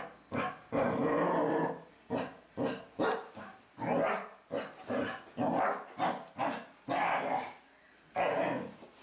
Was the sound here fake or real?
real